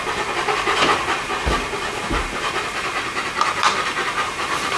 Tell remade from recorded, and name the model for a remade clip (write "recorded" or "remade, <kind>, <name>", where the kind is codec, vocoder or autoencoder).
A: remade, vocoder, BigVGAN v2